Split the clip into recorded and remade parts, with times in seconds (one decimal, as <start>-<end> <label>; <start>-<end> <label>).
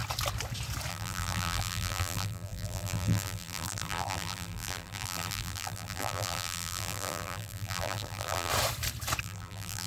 0.0-0.9 recorded; 0.9-8.5 remade; 8.5-9.2 recorded; 9.2-9.9 remade